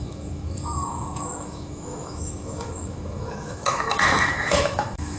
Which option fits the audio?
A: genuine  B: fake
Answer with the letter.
B